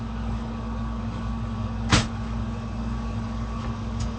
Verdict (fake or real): fake